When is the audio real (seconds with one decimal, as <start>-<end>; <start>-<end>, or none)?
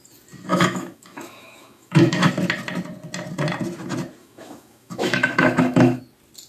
0.0-0.5; 2.3-4.2; 6.0-6.5